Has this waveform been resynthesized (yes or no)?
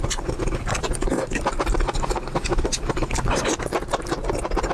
no